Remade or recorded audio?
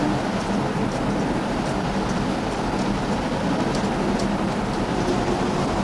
recorded